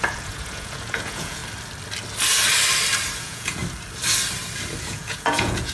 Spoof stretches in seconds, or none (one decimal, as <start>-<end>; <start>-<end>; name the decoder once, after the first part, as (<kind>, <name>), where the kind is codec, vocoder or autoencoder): 0.0-1.4 (vocoder, Vocos); 3.2-3.6; 4.8-5.7